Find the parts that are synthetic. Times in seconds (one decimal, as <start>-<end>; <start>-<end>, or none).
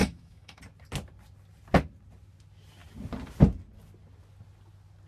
0.0-0.6